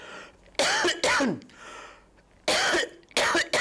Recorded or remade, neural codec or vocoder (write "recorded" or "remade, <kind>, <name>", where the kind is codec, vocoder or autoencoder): recorded